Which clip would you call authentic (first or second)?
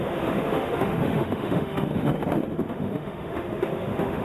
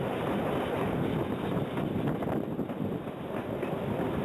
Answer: second